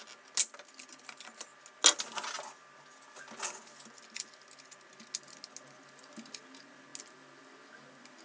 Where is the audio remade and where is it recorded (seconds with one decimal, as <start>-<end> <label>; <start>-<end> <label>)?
0.0-8.2 recorded